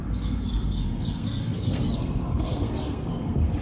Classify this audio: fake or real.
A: fake